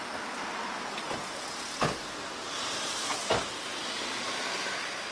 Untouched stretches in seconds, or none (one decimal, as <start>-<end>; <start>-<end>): 0.0-2.0; 3.3-5.1